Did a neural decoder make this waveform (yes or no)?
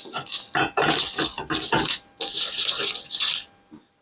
no